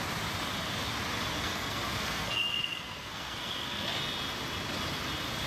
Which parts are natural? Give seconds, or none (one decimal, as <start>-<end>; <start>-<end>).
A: 0.0-1.3; 4.0-5.5